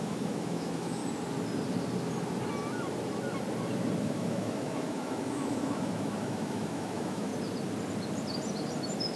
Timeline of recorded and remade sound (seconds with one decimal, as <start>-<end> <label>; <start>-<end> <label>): 0.0-1.0 remade; 1.0-4.0 recorded; 4.0-7.3 remade; 7.3-9.2 recorded